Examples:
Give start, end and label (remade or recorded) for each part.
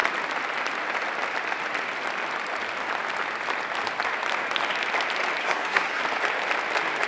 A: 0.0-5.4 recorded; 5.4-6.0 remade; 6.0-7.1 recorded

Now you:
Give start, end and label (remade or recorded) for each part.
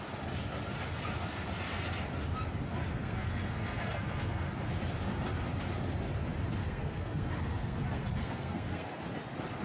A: 0.0-2.9 recorded; 2.9-4.8 remade; 4.8-6.6 recorded; 6.6-9.0 remade; 9.0-9.6 recorded